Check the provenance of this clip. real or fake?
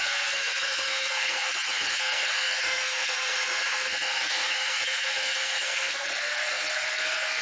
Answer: fake